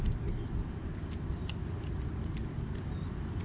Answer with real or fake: real